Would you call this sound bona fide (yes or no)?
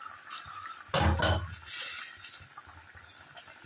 yes